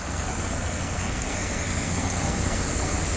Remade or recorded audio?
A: remade